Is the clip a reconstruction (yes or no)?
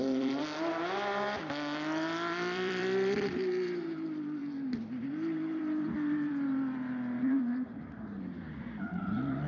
yes